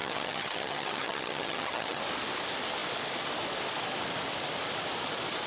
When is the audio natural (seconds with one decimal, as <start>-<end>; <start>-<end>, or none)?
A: 2.0-5.5